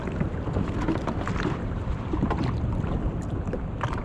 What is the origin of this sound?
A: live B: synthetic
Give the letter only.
B